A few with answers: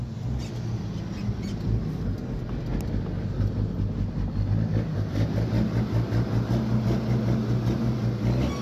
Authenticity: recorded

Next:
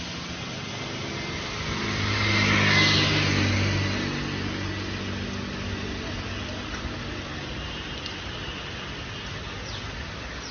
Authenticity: recorded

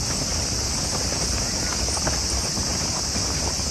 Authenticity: recorded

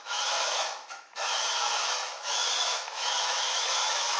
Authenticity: remade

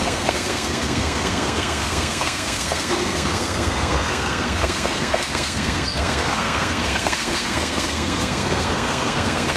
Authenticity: remade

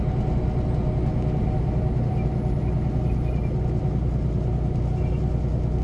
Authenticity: recorded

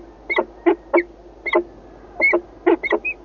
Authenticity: recorded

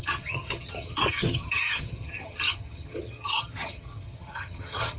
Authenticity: remade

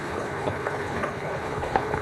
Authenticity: remade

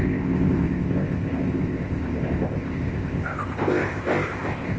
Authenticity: remade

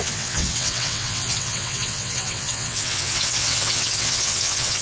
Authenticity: remade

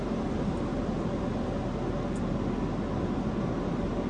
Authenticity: recorded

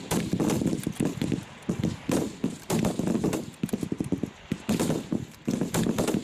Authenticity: recorded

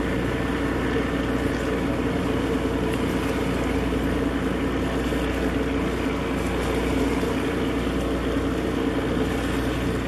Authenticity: recorded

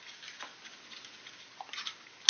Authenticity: recorded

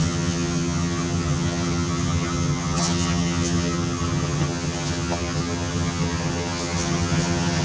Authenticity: remade